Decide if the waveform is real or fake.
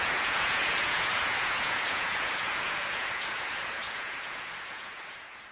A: fake